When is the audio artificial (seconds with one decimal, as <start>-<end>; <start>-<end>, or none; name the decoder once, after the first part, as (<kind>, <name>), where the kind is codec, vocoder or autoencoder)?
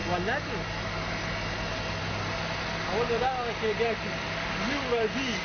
none